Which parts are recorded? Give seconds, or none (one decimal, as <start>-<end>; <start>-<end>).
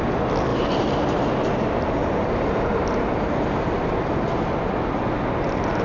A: 0.0-0.5; 4.0-5.8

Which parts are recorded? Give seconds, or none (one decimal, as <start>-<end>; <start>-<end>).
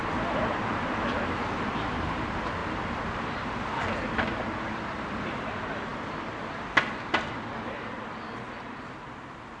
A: 0.0-2.6; 3.2-9.6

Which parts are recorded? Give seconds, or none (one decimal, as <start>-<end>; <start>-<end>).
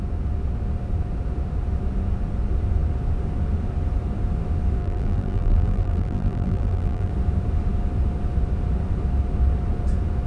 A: 0.0-4.8; 7.1-10.3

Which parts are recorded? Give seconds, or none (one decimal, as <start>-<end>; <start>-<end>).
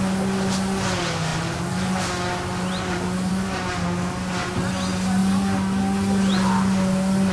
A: 0.0-1.3; 3.3-5.2; 5.8-7.3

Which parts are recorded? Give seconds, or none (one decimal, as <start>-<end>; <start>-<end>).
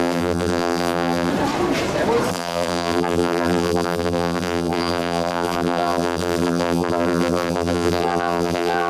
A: 1.3-2.3